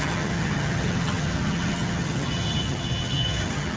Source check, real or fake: fake